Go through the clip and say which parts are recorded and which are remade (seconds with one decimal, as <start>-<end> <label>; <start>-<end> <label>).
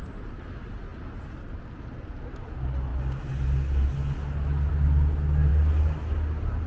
0.0-6.7 recorded